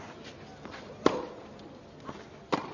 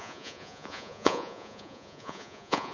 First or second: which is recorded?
first